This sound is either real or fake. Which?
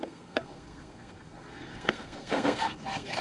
fake